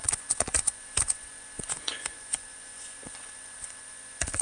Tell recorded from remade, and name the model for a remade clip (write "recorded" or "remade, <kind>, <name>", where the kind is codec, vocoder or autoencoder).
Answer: remade, vocoder, Vocos